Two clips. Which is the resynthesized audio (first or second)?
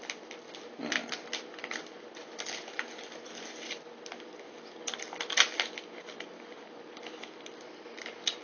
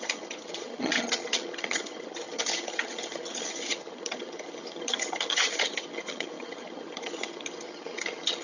second